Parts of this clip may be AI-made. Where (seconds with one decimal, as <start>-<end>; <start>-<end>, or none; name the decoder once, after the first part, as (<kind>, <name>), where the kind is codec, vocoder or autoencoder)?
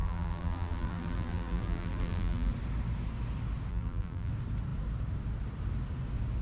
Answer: 0.0-2.5 (vocoder, BigVGAN v2); 3.7-4.3